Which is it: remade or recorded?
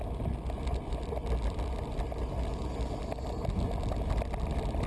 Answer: recorded